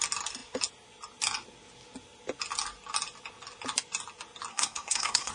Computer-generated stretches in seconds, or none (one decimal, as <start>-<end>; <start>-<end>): 4.5-5.3